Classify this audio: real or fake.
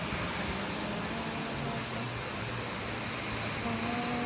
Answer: real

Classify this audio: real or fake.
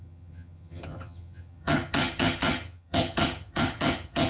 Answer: fake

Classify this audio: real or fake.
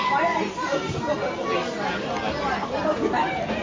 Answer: real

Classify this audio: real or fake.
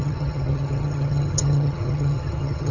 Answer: fake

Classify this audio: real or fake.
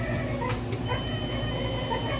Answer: real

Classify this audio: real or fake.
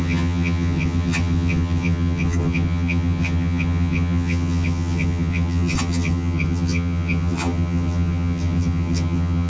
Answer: fake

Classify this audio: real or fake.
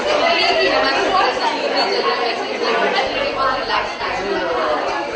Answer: real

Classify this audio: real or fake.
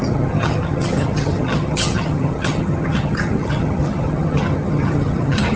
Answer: fake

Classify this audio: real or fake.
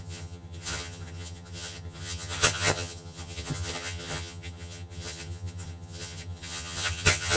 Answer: fake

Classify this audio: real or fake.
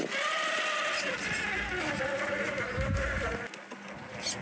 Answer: real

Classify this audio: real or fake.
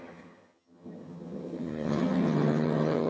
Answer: fake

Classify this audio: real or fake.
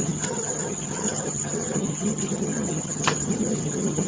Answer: fake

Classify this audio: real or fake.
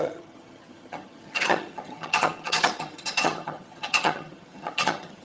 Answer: fake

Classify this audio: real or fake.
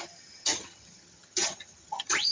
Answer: fake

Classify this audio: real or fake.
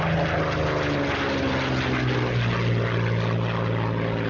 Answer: real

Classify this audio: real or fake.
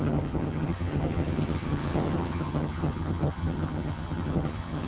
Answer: fake